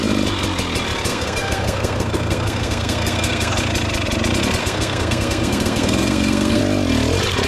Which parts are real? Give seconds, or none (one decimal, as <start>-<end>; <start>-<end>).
0.0-1.1; 3.5-4.6; 6.6-7.5